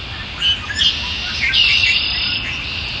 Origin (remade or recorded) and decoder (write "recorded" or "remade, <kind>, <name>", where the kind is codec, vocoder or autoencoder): recorded